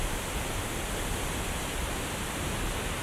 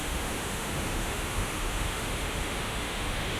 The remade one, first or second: second